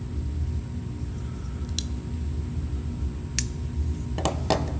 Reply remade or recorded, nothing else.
recorded